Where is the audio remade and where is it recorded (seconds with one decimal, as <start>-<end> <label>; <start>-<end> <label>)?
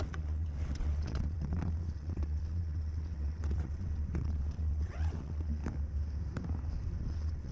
0.0-5.6 remade; 5.6-7.0 recorded; 7.0-7.5 remade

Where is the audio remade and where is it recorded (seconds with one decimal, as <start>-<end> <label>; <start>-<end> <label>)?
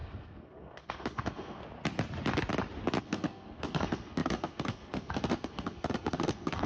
0.0-1.6 remade; 1.6-3.0 recorded; 3.0-6.7 remade